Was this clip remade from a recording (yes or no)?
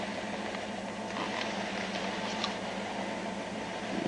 no